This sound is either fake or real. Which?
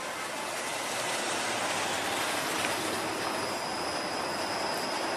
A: real